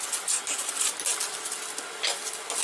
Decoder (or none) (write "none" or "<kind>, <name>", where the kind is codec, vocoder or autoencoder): none